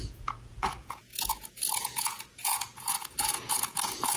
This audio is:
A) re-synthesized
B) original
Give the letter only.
A